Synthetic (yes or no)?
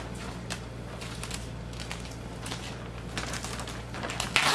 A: no